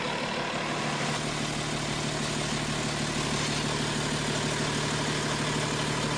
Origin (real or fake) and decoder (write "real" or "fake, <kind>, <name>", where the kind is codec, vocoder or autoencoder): real